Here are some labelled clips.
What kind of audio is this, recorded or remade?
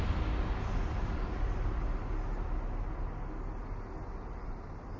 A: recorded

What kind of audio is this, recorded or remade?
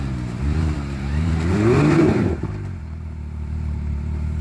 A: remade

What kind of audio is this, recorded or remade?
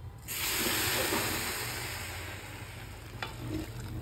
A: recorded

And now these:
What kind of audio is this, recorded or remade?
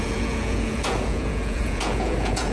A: remade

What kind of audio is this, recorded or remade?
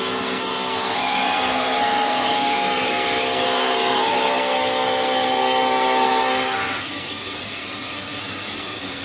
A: remade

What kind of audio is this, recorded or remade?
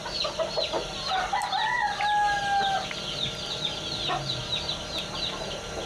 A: recorded